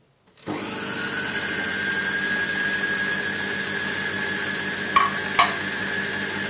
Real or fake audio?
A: real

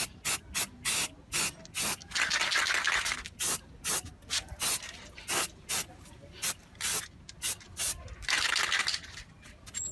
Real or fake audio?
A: real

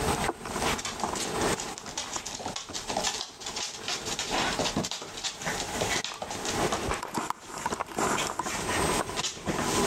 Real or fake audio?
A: real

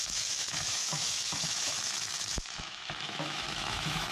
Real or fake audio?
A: fake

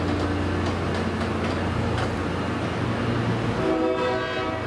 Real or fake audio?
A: real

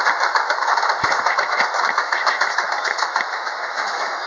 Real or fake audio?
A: fake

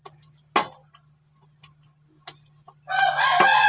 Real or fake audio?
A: real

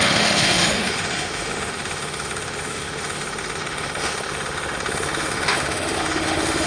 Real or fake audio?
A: fake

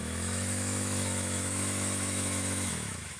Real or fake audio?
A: fake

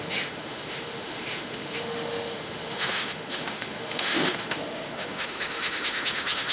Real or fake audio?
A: fake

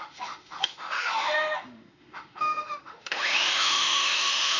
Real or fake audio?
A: fake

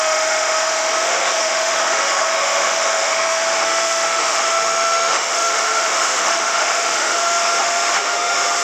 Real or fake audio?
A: fake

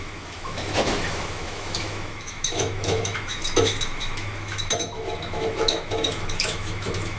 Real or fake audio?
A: fake